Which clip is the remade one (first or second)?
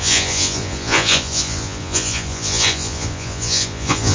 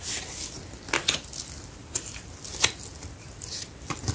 first